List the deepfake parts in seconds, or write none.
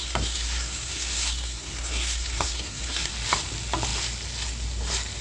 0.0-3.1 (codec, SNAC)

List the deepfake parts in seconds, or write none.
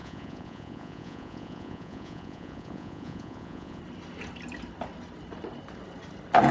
0.0-3.8 (vocoder, Vocos)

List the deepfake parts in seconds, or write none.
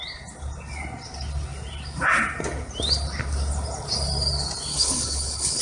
4.7-5.6 (codec, HILCodec)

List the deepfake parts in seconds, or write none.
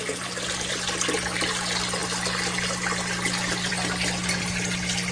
none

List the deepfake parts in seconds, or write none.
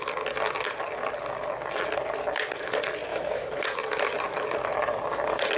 3.1-3.6 (autoencoder, DAC-VAE)